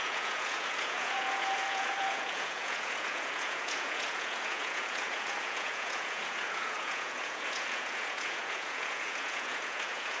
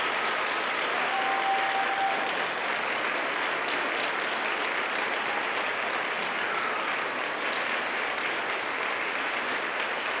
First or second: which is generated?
first